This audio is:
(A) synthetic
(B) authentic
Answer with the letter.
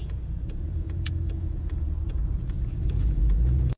A